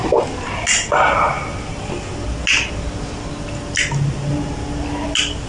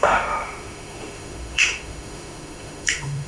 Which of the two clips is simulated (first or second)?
second